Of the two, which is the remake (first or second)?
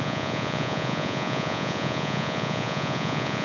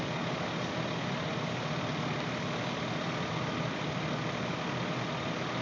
first